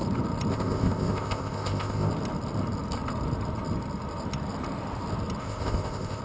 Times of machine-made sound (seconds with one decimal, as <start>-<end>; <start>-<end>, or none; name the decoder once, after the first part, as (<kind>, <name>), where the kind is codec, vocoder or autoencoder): 0.5-2.1 (codec, ZipCodec); 5.4-6.2